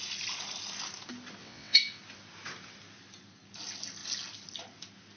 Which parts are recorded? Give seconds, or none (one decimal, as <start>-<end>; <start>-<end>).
0.0-1.4; 2.0-5.2